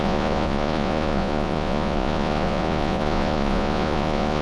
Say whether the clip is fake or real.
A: fake